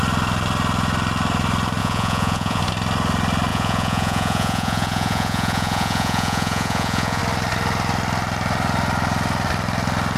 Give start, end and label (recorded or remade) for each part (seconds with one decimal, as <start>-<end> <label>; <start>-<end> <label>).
0.0-1.8 recorded; 1.8-2.6 remade; 2.6-3.5 recorded; 3.5-7.2 remade; 7.2-10.2 recorded